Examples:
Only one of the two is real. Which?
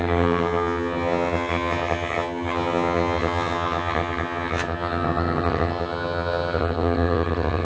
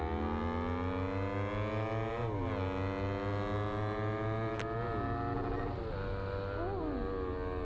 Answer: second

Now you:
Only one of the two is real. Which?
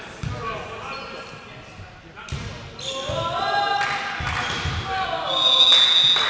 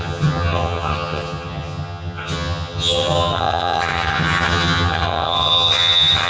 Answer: first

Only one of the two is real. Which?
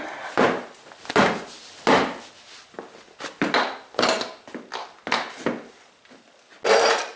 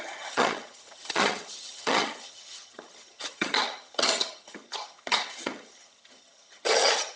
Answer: first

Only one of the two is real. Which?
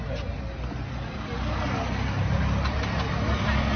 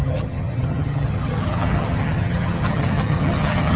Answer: first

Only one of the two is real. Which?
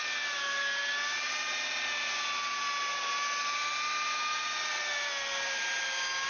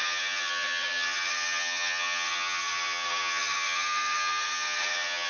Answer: first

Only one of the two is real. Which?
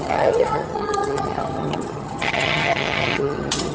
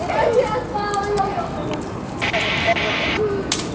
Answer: second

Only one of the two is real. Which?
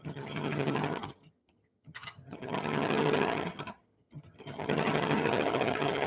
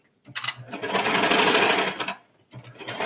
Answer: second